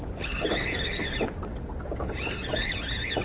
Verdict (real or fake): real